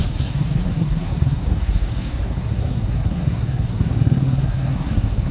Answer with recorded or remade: remade